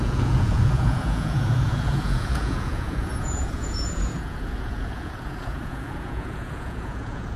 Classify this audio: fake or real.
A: fake